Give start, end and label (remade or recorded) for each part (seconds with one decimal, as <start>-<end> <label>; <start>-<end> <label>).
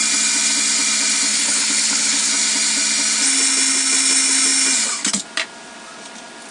0.0-1.3 recorded; 1.3-2.3 remade; 2.3-6.5 recorded